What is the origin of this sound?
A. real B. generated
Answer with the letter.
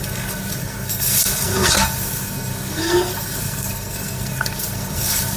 B